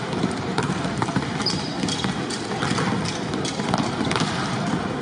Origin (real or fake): fake